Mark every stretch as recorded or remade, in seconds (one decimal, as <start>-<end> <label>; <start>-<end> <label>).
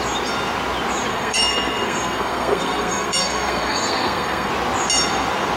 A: 0.0-1.1 recorded; 1.1-4.5 remade; 4.5-5.6 recorded